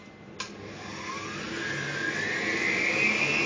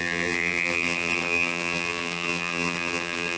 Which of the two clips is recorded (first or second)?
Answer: first